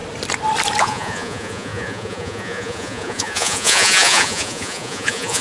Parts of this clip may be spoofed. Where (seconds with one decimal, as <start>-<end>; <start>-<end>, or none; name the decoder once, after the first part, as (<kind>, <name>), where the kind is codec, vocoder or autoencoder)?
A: 0.8-5.4 (vocoder, Vocos)